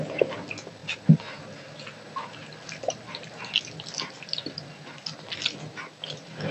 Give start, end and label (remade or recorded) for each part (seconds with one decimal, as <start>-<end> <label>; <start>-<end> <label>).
0.0-6.5 recorded